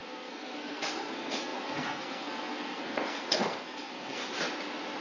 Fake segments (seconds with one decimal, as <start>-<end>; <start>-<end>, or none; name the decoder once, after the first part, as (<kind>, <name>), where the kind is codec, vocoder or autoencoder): 0.0-4.2 (codec, SNAC)